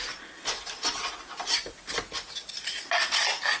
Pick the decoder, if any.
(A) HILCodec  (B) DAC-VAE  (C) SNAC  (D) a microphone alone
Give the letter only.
D